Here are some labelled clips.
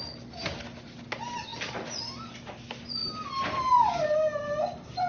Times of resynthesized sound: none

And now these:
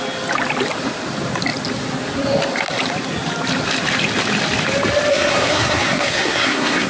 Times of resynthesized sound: 5.1-6.9 (codec, SNAC)

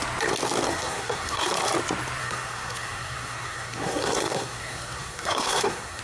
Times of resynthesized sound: 0.7-1.5 (codec, SNAC); 2.2-6.0

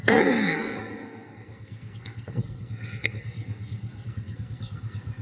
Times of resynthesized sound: 0.0-5.2 (codec, SNAC)